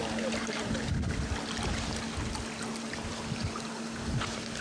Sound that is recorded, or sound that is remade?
recorded